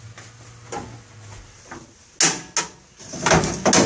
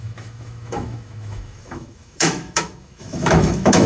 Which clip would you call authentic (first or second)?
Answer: first